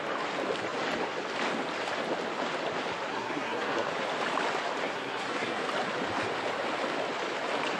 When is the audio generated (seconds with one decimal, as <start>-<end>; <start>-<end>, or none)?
3.1-3.9; 4.8-5.6